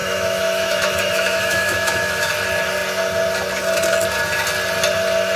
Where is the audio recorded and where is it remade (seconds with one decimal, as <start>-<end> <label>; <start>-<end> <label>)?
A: 0.0-2.3 remade; 2.3-5.4 recorded